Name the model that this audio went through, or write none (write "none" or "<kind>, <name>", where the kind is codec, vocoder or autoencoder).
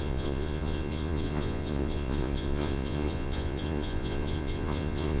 vocoder, Vocos